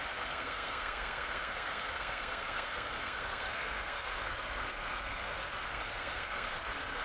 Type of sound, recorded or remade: remade